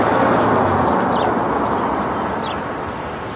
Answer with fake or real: real